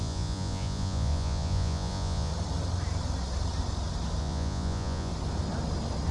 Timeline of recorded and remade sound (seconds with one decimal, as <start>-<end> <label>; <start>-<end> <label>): 0.0-2.3 remade; 2.3-4.2 recorded; 4.2-5.1 remade; 5.1-6.1 recorded